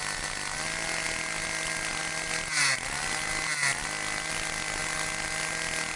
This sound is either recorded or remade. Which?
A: recorded